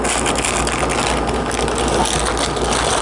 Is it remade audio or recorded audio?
recorded